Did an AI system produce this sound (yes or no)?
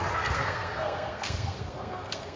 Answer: yes